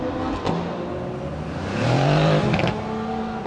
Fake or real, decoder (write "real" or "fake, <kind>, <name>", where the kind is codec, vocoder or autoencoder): real